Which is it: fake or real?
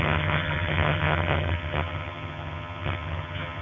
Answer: fake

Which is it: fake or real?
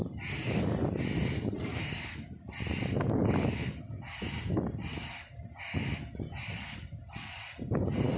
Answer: real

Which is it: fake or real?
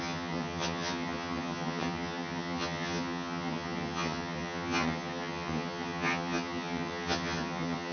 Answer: fake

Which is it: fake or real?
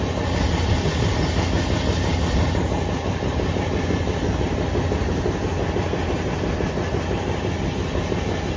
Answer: real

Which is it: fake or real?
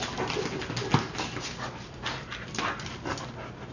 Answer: real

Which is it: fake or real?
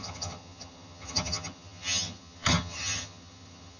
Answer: fake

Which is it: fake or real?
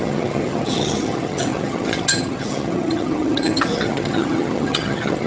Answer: fake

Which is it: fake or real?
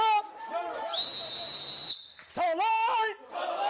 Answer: real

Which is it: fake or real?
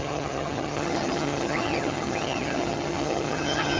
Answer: fake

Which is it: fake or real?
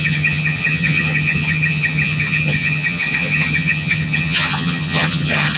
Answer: fake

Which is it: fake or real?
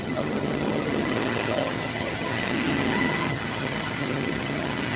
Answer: fake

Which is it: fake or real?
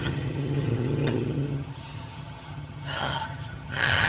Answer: fake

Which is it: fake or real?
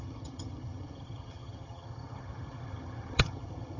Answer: fake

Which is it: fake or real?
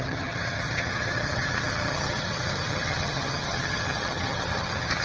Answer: fake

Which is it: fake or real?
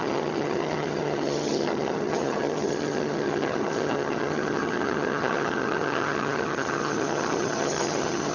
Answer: fake